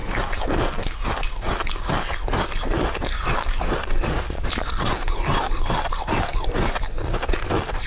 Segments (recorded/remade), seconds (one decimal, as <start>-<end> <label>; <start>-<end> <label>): 0.0-3.2 recorded; 3.2-4.7 remade; 4.7-7.9 recorded